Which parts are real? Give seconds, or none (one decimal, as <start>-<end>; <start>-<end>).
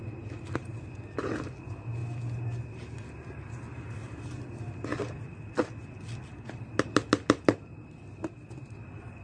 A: 0.0-9.2